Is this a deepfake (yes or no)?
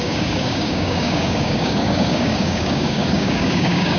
yes